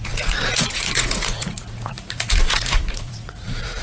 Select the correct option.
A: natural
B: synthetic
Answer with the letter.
B